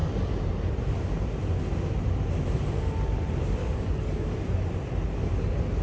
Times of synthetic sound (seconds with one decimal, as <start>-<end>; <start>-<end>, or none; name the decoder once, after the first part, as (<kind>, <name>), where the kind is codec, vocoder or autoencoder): 3.6-4.3 (codec, DAC)